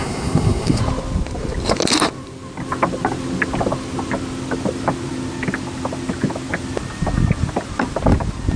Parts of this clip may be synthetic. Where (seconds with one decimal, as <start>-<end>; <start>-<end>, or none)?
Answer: 0.0-0.8